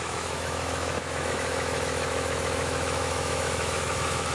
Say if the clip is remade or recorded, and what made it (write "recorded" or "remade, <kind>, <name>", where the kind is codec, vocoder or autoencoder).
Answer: remade, autoencoder, DAC-VAE